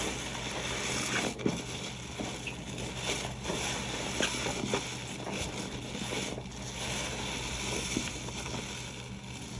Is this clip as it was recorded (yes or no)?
yes